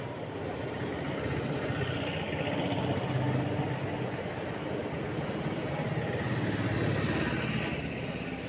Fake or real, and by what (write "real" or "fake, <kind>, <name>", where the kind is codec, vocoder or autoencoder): real